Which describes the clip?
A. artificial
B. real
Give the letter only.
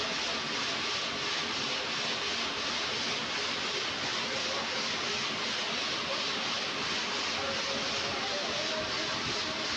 B